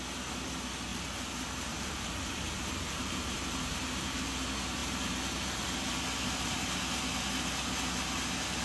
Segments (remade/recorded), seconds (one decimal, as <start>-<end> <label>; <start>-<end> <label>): 0.0-0.9 recorded; 0.9-4.2 remade; 4.2-4.8 recorded; 4.8-6.0 remade; 6.0-8.6 recorded